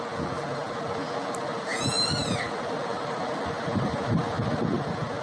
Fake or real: real